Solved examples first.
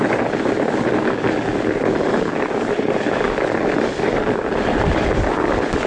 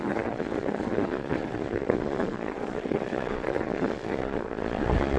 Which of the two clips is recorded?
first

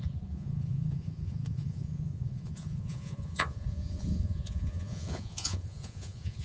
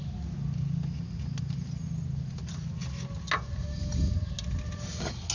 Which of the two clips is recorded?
second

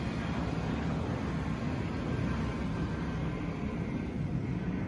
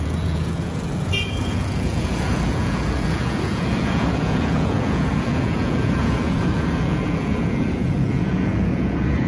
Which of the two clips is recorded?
first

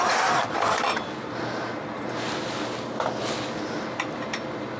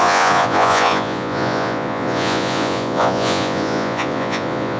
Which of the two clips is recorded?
first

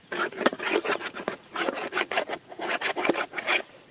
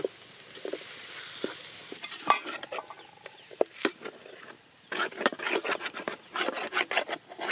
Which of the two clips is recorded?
second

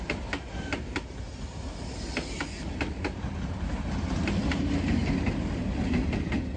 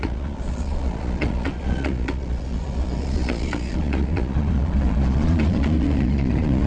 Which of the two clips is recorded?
first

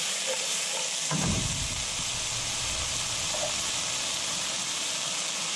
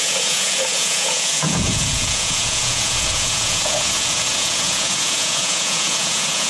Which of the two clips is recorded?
first